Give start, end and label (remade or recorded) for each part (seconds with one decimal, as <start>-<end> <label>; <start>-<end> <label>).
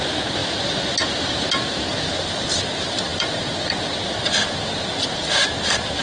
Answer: 0.0-6.0 recorded